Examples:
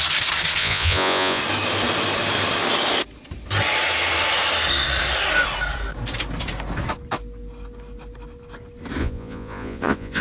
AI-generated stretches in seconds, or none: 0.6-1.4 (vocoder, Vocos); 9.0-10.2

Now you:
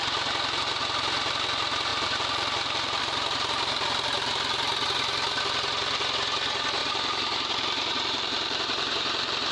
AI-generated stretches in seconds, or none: 1.9-3.0 (vocoder, BigVGAN v2); 6.8-9.5

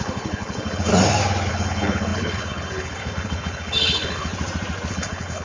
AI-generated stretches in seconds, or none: 0.0-0.9 (codec, HILCodec); 1.5-4.3; 4.9-5.4